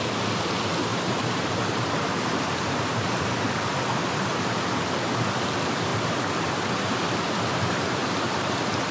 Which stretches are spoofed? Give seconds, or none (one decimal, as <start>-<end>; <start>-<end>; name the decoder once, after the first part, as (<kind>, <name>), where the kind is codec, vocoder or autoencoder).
0.9-3.5 (vocoder, BigVGAN v2); 4.0-4.8; 5.9-6.9; 8.0-8.9